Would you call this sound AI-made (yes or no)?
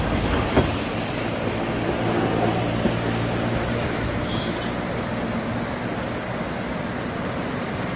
no